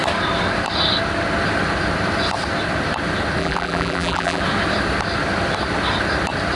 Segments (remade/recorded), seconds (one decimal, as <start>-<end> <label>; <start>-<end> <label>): 0.0-3.4 recorded; 3.4-4.4 remade; 4.4-6.6 recorded